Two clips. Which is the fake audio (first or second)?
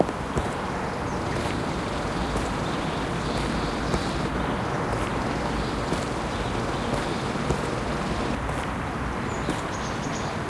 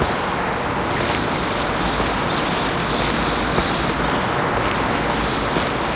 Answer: first